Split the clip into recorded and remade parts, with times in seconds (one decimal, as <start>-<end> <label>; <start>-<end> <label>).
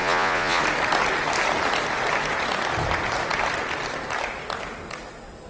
0.0-0.6 remade; 0.6-5.5 recorded